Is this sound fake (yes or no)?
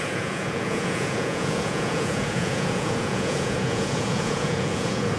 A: yes